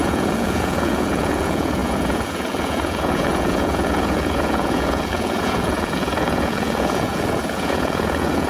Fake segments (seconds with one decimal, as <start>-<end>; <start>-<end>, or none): 0.0-8.5